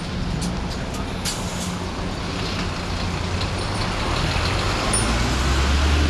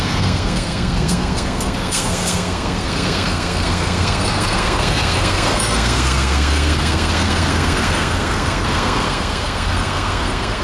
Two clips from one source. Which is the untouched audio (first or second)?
first